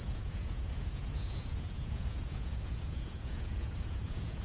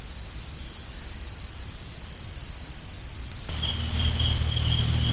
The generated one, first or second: first